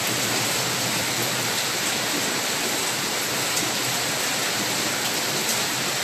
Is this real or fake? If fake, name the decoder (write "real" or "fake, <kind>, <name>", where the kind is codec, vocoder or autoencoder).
fake, vocoder, BigVGAN v2